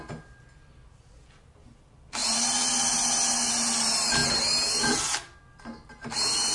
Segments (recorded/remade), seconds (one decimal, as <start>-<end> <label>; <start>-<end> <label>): 0.0-6.5 recorded